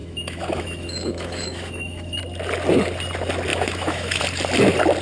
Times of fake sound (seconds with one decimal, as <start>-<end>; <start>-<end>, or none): 0.0-2.2; 3.5-4.2

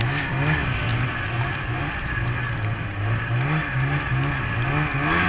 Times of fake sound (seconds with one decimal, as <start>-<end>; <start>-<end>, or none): 0.9-4.1

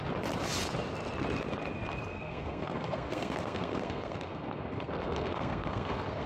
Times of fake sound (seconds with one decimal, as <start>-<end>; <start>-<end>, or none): 2.1-6.3